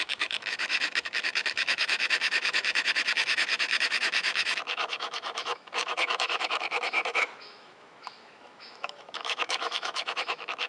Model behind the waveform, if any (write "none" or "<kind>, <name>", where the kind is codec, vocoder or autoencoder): autoencoder, DAC-VAE